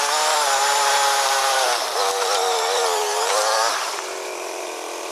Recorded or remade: remade